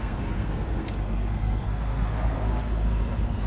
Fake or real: fake